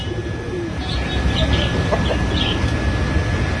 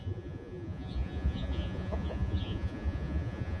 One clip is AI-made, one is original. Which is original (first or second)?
first